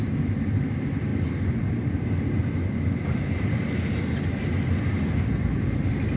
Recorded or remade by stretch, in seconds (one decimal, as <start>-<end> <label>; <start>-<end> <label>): 0.0-6.2 recorded